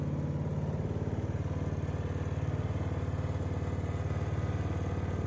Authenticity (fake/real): real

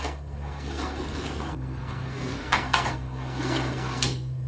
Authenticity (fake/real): fake